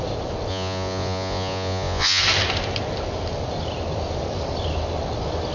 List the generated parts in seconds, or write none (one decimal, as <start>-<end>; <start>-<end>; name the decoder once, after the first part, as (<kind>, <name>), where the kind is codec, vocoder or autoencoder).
0.5-2.2 (vocoder, Vocos)